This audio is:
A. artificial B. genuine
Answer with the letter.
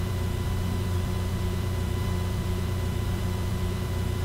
A